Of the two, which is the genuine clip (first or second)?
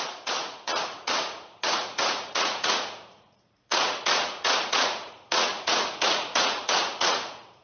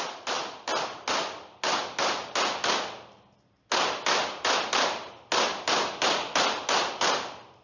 second